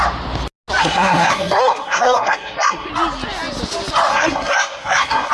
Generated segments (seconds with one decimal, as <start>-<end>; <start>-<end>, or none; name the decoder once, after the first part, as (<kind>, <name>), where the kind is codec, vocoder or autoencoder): 0.8-2.9 (codec, SNAC); 4.1-5.3